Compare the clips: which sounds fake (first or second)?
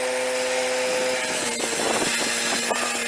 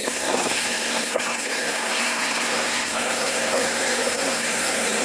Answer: second